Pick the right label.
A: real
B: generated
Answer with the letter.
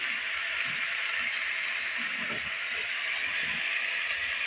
A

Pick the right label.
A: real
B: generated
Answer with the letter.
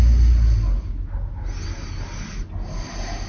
A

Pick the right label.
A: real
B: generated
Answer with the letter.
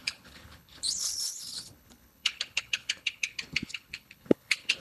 B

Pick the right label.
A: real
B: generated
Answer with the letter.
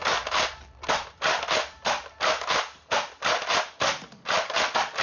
A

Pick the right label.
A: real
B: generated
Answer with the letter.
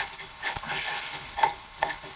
B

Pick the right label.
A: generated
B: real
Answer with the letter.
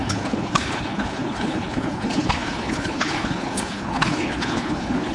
A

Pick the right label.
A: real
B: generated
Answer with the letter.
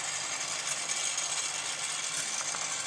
A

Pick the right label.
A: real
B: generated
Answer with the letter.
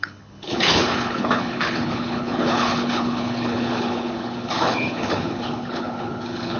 B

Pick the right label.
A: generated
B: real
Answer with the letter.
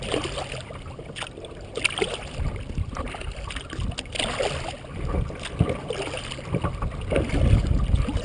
B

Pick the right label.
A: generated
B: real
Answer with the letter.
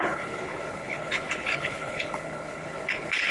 A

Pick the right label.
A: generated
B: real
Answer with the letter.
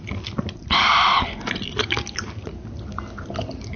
B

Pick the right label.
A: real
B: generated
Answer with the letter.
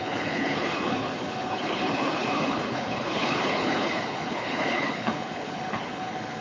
B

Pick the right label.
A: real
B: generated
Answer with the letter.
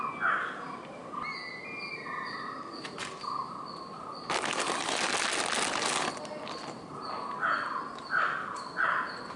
A